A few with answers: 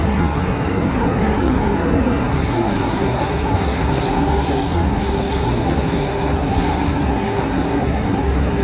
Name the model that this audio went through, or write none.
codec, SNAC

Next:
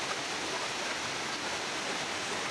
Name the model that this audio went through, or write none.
none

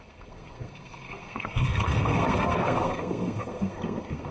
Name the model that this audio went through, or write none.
codec, SNAC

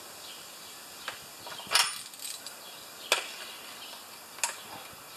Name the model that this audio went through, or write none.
none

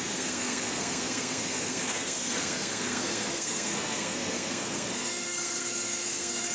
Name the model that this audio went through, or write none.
codec, SNAC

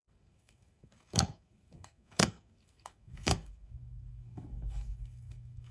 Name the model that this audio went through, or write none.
codec, SNAC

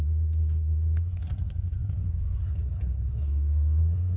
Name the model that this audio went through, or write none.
codec, SNAC